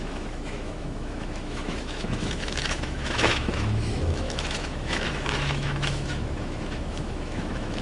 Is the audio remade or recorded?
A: remade